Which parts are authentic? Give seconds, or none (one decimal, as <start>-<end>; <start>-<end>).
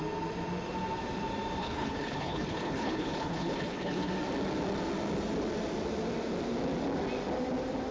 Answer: 0.0-1.6; 4.1-7.9